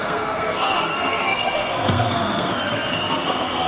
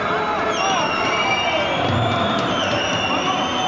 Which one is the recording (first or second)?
second